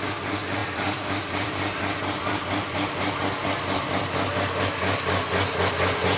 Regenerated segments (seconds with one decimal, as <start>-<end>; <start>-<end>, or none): 0.6-4.3